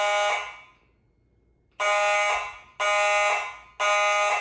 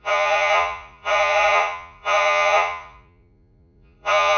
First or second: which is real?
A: first